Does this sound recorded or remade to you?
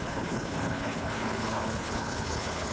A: remade